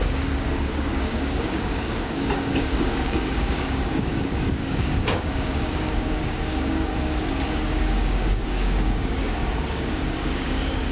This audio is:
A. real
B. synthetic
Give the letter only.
B